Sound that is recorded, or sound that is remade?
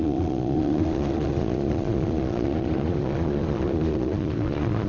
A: remade